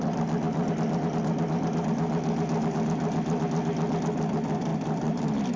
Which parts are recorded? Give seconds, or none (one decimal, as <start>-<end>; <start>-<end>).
0.0-5.6